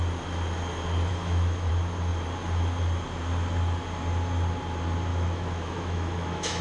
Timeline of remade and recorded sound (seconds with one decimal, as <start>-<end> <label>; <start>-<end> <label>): 0.0-1.1 recorded; 1.1-1.7 remade; 1.7-5.1 recorded; 5.1-6.6 remade